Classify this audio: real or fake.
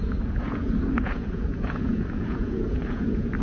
fake